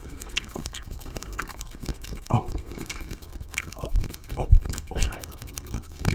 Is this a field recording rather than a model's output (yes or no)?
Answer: no